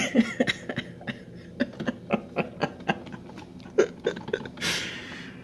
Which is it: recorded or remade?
recorded